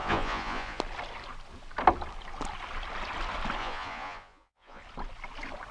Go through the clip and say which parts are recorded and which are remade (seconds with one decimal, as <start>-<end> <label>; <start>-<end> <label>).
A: 0.0-0.8 remade; 0.8-3.6 recorded; 3.6-4.8 remade; 4.8-5.7 recorded